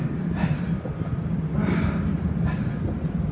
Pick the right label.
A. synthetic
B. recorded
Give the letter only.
B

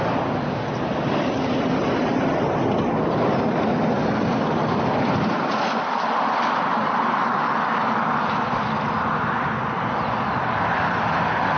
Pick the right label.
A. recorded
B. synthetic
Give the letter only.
A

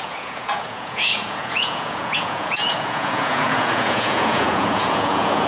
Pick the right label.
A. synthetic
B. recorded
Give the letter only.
A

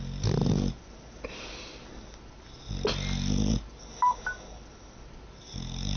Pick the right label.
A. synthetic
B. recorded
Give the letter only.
B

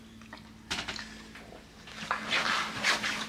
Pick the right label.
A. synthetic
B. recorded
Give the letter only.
B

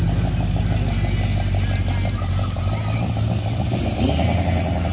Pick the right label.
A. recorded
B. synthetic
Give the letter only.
A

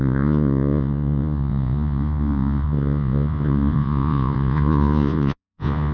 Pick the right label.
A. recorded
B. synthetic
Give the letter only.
B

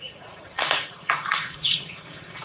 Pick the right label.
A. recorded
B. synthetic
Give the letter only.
B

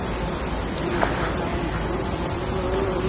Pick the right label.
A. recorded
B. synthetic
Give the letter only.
A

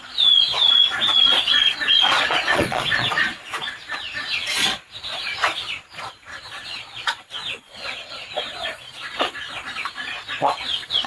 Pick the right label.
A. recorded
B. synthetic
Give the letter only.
B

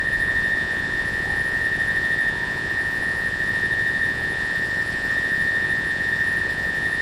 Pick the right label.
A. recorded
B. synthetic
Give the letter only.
B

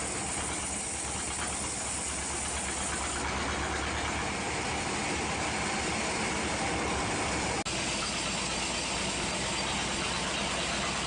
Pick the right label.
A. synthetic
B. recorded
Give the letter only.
B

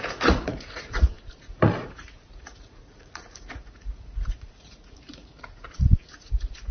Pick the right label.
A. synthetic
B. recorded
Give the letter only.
A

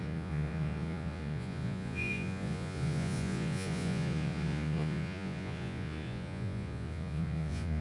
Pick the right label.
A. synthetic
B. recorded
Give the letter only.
A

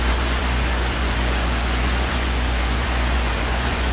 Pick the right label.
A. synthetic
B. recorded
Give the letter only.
A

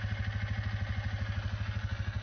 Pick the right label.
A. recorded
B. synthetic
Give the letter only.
A